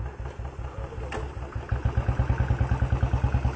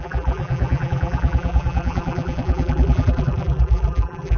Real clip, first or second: first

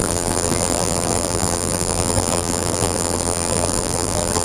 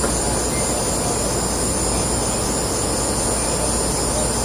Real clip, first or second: second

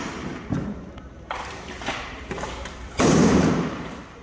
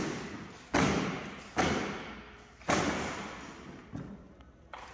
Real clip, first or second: second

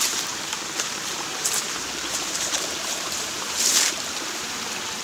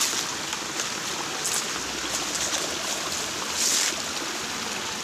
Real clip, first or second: second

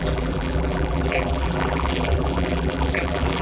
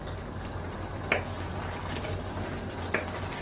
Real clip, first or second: second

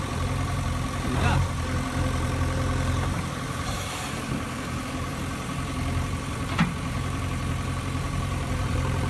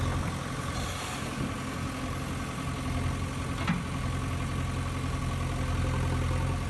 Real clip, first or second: second